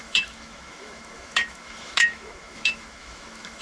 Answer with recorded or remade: remade